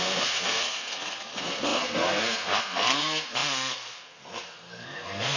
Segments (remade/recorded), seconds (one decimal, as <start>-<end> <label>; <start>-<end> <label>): 0.0-5.4 remade